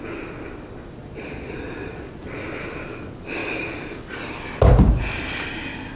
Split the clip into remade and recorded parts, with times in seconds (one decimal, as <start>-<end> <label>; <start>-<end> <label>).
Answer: 0.0-1.0 recorded; 1.0-2.2 remade; 2.2-6.0 recorded